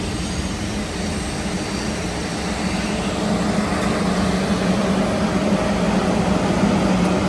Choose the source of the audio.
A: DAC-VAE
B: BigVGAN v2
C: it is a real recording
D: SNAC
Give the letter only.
C